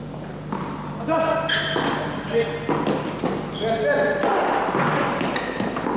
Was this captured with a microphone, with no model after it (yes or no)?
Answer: yes